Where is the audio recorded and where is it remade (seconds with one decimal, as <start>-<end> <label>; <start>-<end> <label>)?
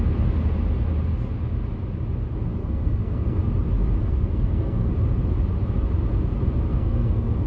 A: 0.0-2.6 recorded; 2.6-3.4 remade; 3.4-4.1 recorded; 4.1-4.9 remade; 4.9-6.7 recorded; 6.7-7.5 remade